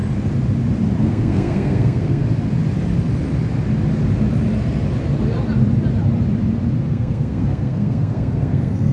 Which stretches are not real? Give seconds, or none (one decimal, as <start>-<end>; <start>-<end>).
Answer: 1.0-2.2; 6.8-8.9